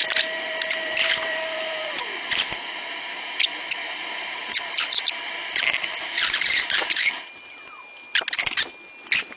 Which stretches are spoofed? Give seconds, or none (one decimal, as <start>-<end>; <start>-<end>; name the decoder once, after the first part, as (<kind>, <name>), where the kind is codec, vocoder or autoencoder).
0.0-2.3 (vocoder, BigVGAN v2); 3.8-7.3

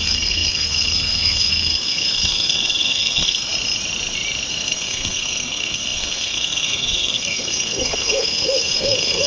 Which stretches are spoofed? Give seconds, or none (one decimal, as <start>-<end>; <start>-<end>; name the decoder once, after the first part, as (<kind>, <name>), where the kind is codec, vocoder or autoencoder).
0.0-3.5 (codec, SNAC); 4.5-9.3

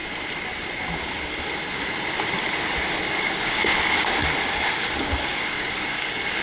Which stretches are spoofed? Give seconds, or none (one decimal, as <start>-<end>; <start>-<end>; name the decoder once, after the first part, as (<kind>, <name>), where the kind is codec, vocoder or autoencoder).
3.2-4.2 (codec, DAC); 4.7-6.4

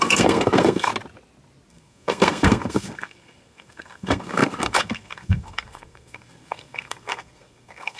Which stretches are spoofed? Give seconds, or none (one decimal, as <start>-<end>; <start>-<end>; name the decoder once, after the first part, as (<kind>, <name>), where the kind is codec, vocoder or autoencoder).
0.0-0.9 (codec, SNAC); 1.7-8.0

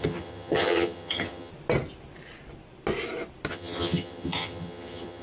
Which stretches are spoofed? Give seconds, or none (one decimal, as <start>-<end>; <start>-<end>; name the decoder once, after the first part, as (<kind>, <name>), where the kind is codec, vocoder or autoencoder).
0.0-1.5 (vocoder, HiFi-GAN); 3.5-5.2

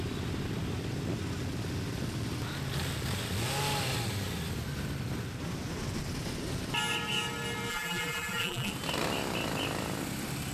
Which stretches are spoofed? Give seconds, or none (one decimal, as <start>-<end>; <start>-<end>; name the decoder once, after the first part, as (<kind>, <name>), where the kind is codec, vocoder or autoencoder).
7.7-8.7 (vocoder, BigVGAN v2)